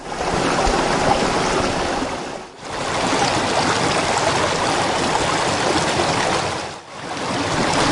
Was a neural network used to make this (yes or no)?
no